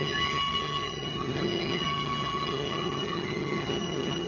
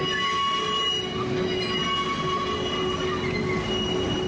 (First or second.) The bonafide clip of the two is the second